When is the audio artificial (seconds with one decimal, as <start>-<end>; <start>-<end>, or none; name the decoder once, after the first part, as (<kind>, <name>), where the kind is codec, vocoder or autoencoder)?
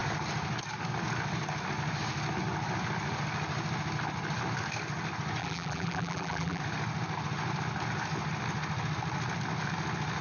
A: 5.4-6.6 (vocoder, BigVGAN v2)